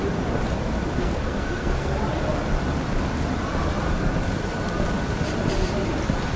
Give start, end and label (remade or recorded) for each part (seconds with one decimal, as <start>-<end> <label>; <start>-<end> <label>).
0.0-1.0 recorded; 1.0-2.0 remade; 2.0-6.4 recorded